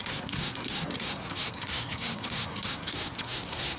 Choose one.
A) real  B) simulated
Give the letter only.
B